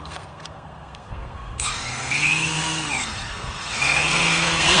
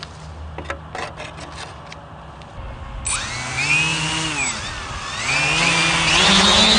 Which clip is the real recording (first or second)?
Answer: second